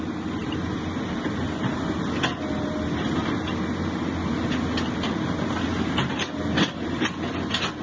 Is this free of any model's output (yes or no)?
yes